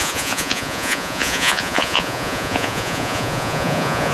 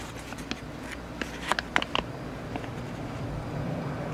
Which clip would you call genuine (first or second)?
second